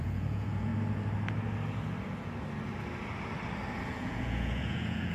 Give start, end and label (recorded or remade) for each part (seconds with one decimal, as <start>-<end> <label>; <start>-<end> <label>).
0.0-0.7 remade; 0.7-3.8 recorded; 3.8-5.1 remade